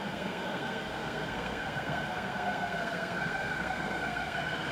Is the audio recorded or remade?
remade